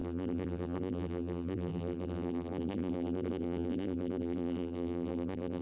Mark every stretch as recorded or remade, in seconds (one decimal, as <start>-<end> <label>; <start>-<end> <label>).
0.0-5.6 remade